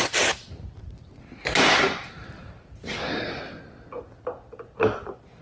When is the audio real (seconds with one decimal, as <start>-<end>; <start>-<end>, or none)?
0.0-5.4

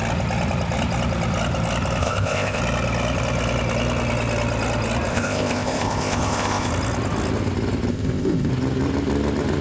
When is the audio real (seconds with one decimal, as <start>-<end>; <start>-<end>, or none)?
0.0-2.0; 2.6-5.1; 6.7-7.9; 8.5-9.6

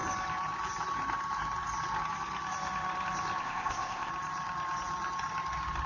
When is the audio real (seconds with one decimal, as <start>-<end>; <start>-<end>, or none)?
0.0-3.4; 4.1-5.9

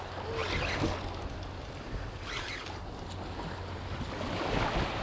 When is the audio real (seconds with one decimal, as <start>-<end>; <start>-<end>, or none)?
0.0-5.0

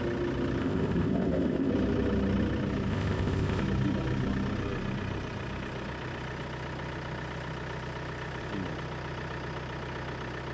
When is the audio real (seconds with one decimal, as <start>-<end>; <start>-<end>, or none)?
0.0-0.6; 1.7-2.9; 3.6-10.5

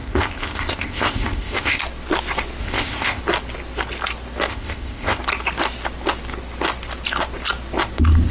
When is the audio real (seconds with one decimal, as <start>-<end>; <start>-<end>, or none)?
1.8-2.6; 3.2-4.5; 5.2-8.3

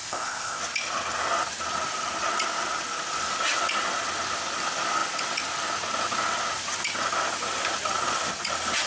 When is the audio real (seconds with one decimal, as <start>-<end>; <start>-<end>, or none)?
0.6-8.9